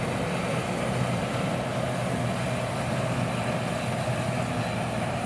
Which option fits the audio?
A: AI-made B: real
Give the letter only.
B